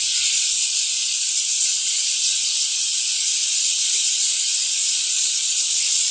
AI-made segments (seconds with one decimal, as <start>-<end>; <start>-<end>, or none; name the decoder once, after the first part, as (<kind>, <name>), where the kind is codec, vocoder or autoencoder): 3.3-4.6 (vocoder, BigVGAN v2)